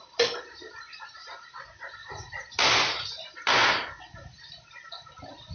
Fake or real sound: real